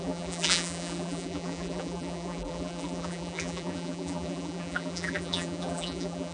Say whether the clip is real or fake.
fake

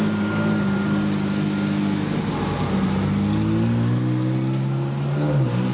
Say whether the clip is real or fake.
real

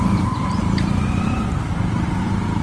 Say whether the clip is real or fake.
real